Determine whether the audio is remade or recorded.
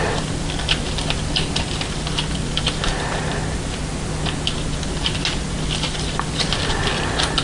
recorded